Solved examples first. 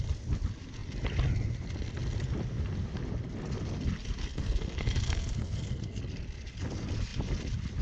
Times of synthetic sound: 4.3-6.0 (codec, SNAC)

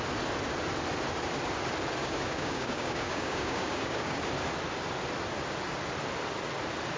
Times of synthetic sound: 2.0-4.2 (codec, DAC)

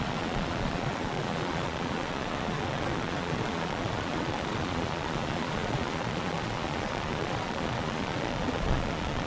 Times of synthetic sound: 0.0-9.3 (vocoder, Vocos)